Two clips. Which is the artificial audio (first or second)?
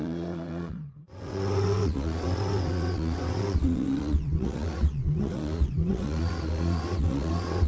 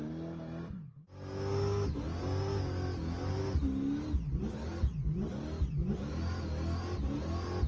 first